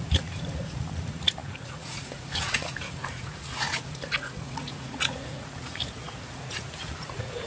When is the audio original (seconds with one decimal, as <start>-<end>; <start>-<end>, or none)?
none